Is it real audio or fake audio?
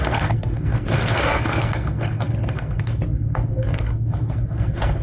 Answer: fake